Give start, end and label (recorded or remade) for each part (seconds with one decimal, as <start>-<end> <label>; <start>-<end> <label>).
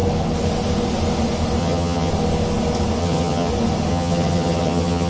0.0-1.6 recorded; 1.6-2.1 remade; 2.1-3.0 recorded; 3.0-3.5 remade; 3.5-3.9 recorded; 3.9-5.1 remade